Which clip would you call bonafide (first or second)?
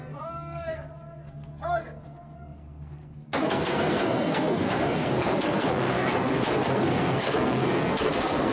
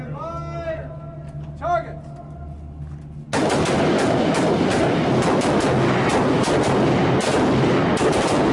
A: second